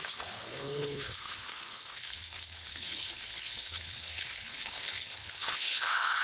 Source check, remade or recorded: remade